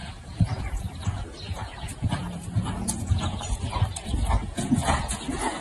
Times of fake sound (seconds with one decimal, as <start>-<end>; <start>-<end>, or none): 0.0-3.4; 4.4-5.6